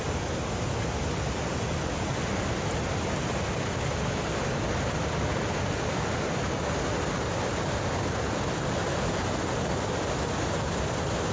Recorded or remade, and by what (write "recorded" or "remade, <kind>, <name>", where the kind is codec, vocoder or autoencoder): recorded